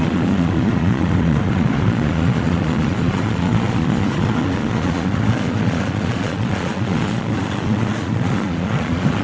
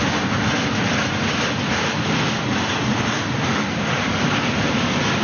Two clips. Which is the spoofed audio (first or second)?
first